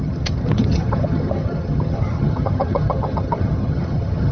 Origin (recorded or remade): remade